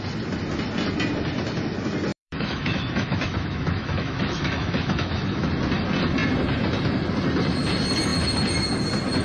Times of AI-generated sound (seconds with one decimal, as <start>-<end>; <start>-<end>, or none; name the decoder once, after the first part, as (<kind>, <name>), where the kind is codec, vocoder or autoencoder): 2.1-5.5 (autoencoder, DAC-VAE)